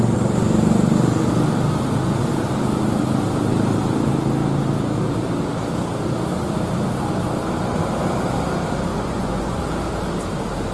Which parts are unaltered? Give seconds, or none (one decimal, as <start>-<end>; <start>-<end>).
0.0-8.9; 9.6-10.7